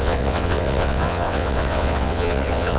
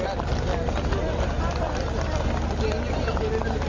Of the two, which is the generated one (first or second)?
first